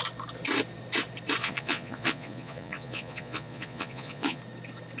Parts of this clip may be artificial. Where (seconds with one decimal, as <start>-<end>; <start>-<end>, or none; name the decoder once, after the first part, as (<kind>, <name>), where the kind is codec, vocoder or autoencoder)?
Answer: 1.4-4.4 (vocoder, Vocos)

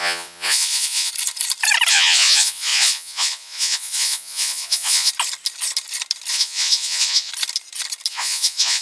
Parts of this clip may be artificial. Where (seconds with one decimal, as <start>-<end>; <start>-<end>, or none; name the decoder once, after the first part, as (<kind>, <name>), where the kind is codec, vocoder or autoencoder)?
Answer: 0.0-1.1 (vocoder, Vocos); 1.9-5.1; 6.3-7.3; 8.1-8.8

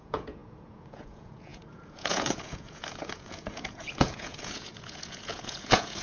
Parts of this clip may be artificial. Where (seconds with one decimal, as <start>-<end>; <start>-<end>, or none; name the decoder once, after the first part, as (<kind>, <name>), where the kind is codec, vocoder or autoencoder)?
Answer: 0.0-6.0 (vocoder, Vocos)

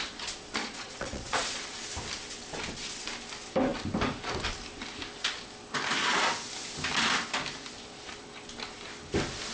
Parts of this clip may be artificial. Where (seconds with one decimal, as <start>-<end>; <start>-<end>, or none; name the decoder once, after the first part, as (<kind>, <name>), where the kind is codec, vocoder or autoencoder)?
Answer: 0.6-1.6 (vocoder, Vocos)

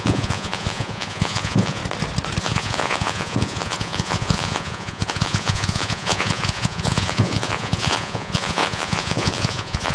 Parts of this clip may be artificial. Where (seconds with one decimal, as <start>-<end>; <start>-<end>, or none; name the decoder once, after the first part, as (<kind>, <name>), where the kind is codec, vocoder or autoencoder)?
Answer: 0.0-1.8 (vocoder, Vocos); 2.4-9.9

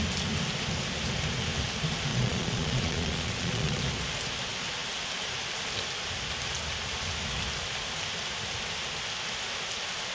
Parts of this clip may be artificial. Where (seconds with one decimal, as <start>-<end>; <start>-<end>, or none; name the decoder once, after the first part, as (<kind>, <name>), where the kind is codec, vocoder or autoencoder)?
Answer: 2.1-3.8 (vocoder, Vocos)